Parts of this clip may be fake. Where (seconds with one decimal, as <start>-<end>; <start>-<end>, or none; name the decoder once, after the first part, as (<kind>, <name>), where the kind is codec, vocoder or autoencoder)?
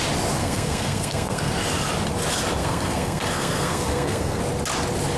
0.4-1.5 (codec, SNAC); 2.6-4.4